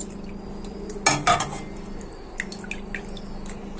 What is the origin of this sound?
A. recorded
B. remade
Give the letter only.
A